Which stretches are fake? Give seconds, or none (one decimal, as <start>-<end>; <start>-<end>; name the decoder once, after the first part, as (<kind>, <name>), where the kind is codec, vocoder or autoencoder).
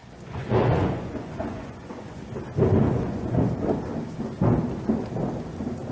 0.0-2.2 (vocoder, Vocos); 2.9-3.5